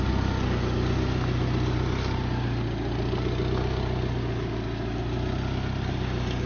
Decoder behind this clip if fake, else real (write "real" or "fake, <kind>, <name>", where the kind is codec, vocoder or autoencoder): real